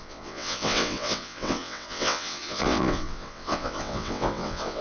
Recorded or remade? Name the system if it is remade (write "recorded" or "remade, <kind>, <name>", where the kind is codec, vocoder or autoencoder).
remade, vocoder, WaveNeXt